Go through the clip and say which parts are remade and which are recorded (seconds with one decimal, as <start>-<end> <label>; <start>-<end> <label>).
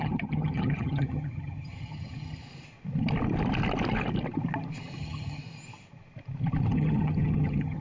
0.0-2.4 remade; 2.4-5.0 recorded; 5.0-5.4 remade; 5.4-6.7 recorded; 6.7-7.8 remade